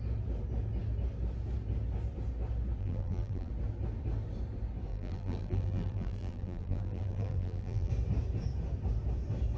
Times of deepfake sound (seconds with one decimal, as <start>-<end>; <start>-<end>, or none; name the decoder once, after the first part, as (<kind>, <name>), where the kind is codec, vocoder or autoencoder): 2.8-3.5 (vocoder, BigVGAN v2); 4.9-7.9